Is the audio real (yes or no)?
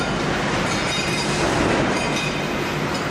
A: yes